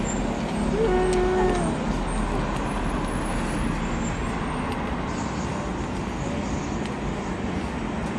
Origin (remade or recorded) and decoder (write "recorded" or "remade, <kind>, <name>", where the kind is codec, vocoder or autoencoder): recorded